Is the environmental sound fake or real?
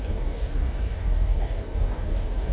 fake